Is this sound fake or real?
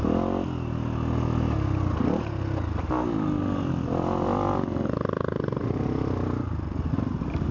real